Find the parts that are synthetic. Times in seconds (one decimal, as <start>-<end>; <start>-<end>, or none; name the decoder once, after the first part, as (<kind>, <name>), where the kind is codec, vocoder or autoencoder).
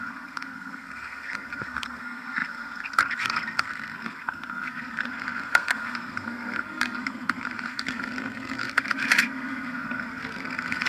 0.0-10.9 (codec, SNAC)